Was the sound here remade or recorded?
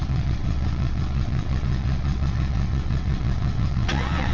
remade